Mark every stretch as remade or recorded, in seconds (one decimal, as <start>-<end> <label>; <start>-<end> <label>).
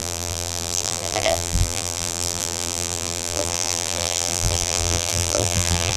0.0-6.0 remade